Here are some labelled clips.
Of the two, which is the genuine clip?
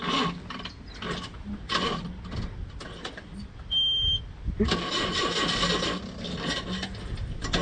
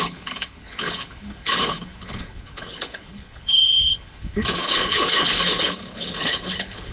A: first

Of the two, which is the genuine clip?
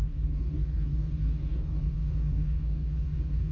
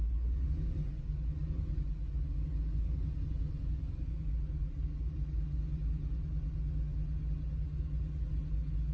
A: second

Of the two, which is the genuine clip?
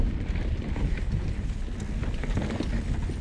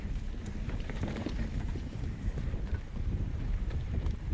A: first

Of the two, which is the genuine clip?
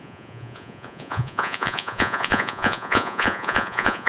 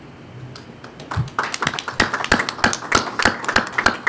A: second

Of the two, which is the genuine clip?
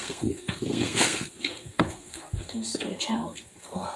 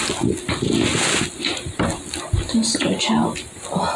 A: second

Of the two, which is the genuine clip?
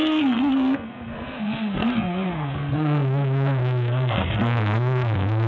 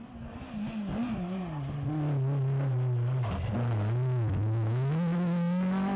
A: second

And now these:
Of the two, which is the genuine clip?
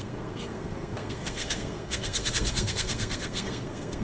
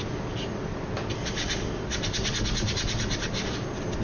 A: second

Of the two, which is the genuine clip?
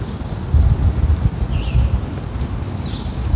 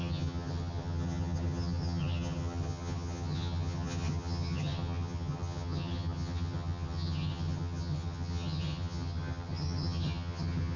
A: first